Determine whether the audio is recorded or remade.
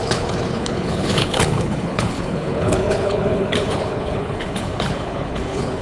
remade